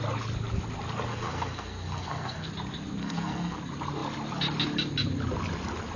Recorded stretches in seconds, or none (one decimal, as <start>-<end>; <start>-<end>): 0.0-1.1; 2.5-3.0; 3.6-6.0